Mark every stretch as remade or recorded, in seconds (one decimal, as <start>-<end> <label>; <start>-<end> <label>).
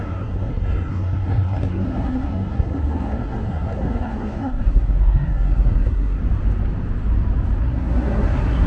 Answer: 0.0-6.2 remade; 6.2-7.6 recorded; 7.6-8.7 remade